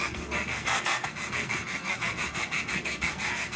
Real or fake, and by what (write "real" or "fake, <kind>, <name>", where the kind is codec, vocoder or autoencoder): fake, codec, SNAC